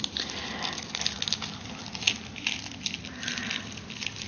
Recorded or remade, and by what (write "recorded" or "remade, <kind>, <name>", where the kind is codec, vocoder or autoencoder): recorded